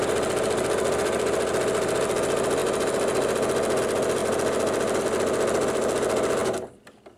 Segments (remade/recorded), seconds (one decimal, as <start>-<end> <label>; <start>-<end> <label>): 0.0-7.2 recorded